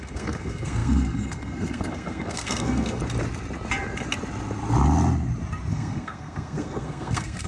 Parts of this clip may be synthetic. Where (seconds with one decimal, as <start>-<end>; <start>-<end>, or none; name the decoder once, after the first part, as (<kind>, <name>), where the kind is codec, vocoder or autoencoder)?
0.0-3.0 (codec, SNAC); 5.7-7.5